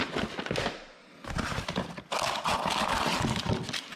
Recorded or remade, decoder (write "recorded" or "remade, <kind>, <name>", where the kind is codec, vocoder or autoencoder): recorded